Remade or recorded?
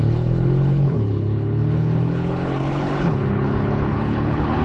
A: remade